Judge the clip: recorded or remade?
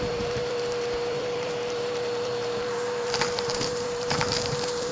remade